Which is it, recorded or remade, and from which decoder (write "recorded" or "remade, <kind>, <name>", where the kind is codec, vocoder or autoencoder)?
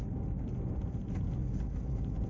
recorded